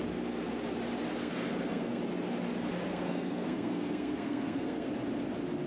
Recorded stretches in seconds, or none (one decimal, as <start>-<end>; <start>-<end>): 0.0-1.2; 2.0-2.9; 4.9-5.7